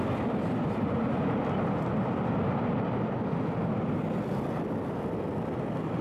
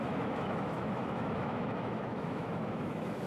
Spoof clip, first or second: second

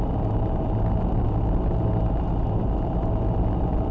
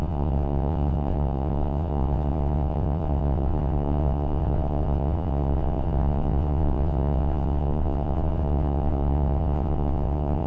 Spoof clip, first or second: second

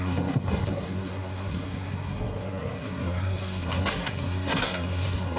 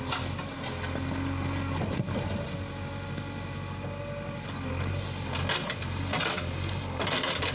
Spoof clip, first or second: first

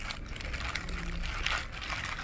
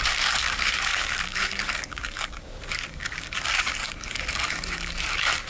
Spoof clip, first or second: second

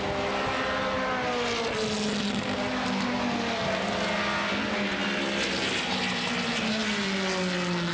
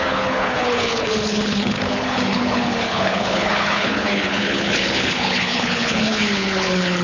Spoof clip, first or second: second